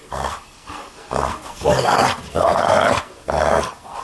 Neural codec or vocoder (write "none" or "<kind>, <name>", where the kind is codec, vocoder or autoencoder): codec, SNAC